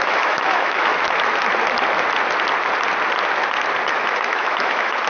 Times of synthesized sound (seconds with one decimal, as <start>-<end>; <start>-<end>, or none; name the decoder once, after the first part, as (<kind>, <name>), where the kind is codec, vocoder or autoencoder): 0.0-0.9 (autoencoder, DAC-VAE); 3.9-5.1